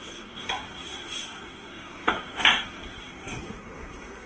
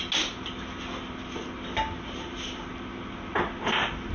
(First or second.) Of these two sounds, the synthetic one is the first